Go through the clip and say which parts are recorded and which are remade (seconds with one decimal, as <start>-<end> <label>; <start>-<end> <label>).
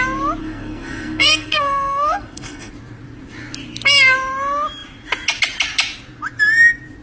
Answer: 0.0-0.4 recorded; 0.4-2.7 remade; 2.7-7.0 recorded